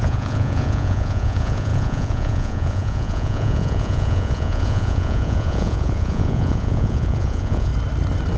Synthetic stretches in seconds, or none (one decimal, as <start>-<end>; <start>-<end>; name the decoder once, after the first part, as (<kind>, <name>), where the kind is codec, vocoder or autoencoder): 0.0-7.7 (vocoder, Vocos)